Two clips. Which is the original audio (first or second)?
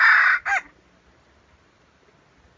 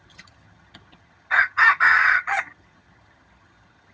first